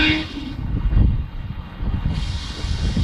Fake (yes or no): yes